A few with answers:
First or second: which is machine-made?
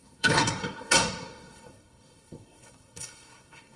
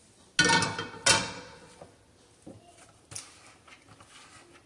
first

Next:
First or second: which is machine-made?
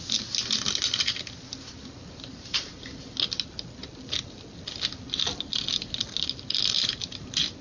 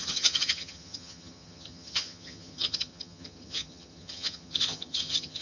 second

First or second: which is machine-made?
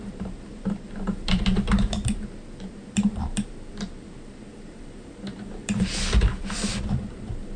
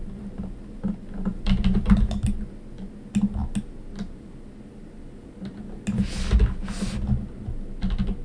first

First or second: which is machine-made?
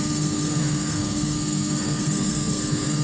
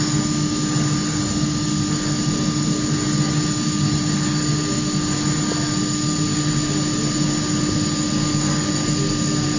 first